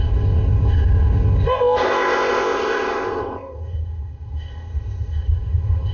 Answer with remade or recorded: remade